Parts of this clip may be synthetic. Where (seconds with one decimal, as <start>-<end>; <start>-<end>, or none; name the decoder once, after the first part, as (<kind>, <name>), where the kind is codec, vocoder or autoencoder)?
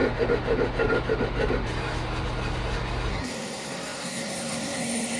3.1-5.2 (codec, SNAC)